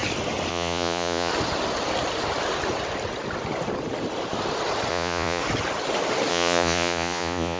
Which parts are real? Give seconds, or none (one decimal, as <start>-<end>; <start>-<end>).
0.0-0.5; 1.3-4.9; 5.4-6.3